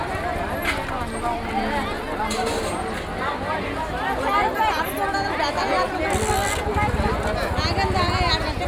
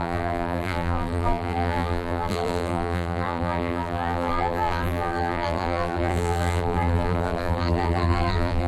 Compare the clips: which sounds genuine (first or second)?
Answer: first